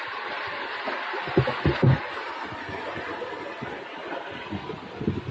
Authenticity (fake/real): real